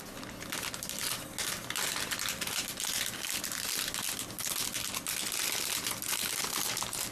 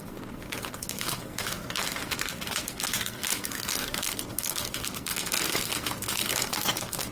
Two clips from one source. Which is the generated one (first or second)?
second